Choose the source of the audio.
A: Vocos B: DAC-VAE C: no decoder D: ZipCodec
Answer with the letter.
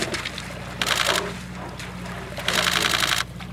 C